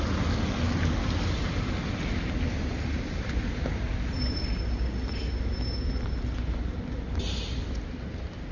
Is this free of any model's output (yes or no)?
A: yes